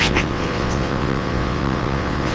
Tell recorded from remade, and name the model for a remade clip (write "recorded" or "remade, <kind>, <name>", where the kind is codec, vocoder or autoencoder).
remade, vocoder, WaveNeXt